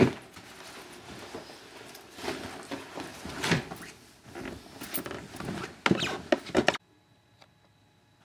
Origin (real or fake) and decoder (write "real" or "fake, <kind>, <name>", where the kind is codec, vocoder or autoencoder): real